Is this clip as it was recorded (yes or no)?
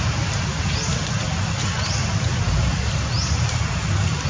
yes